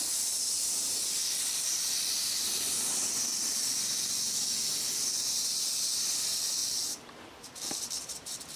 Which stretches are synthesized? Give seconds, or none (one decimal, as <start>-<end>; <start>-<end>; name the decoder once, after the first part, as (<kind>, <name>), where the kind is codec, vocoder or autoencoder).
0.0-3.3 (vocoder, BigVGAN v2); 4.7-6.6; 7.7-8.6